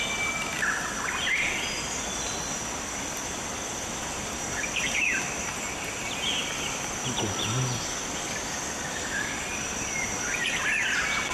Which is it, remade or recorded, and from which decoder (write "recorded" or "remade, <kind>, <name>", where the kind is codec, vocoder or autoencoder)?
recorded